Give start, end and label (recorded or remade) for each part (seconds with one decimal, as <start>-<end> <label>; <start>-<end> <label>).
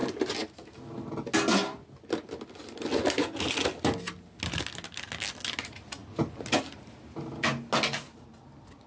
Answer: 0.0-8.9 recorded